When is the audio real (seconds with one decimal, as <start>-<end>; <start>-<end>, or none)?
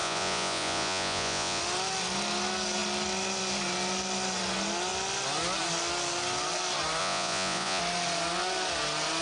1.6-7.0; 7.8-9.2